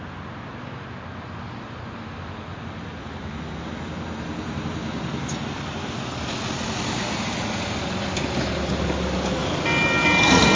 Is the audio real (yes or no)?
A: yes